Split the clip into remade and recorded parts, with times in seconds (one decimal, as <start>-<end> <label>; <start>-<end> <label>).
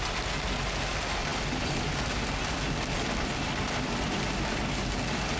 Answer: 0.0-5.4 recorded